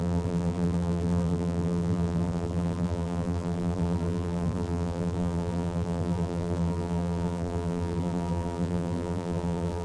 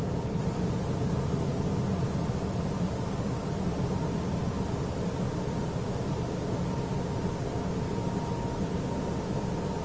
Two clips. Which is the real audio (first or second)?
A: second